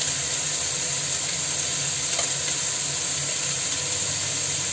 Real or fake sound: real